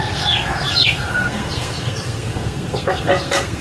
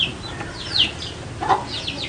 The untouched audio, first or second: second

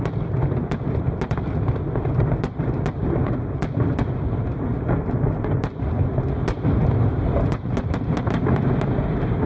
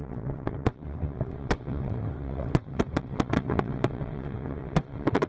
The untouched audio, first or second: first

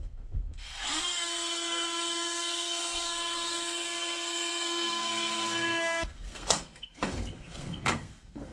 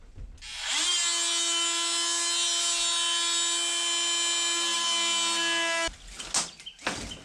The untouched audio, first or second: second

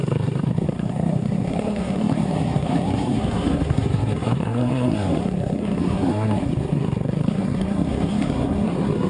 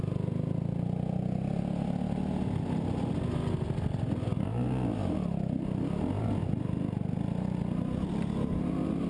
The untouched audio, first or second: second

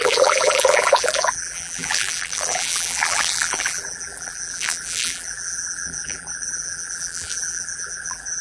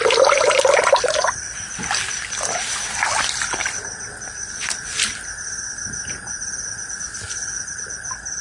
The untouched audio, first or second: second